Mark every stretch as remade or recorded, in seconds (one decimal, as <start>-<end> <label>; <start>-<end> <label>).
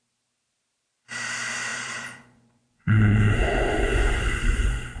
0.0-1.7 recorded; 1.7-5.0 remade